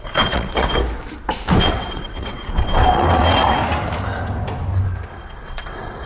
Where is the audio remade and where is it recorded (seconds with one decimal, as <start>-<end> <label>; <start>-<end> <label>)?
0.0-0.8 remade; 0.8-1.6 recorded; 1.6-3.6 remade; 3.6-5.1 recorded; 5.1-6.1 remade